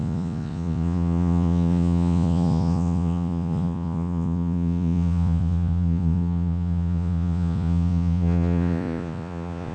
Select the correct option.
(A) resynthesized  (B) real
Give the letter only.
A